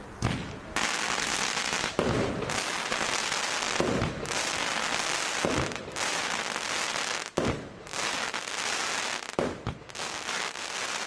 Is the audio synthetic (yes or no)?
no